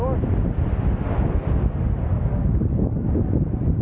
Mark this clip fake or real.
real